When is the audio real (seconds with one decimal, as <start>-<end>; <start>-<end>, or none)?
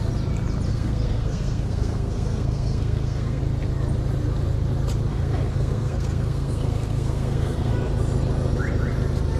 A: 0.0-0.7; 3.4-5.1; 7.7-9.4